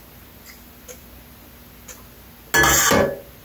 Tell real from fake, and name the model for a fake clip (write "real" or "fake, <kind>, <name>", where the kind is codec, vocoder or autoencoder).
real